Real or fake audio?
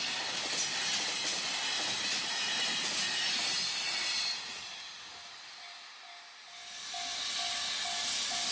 real